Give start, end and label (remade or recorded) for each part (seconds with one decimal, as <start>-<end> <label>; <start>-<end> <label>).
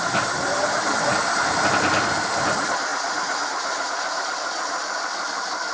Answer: 0.0-2.9 recorded; 2.9-4.2 remade; 4.2-5.7 recorded